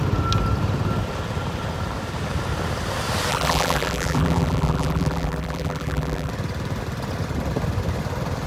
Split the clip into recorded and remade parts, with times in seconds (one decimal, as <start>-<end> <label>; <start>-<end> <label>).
0.0-3.3 recorded; 3.3-6.3 remade; 6.3-8.5 recorded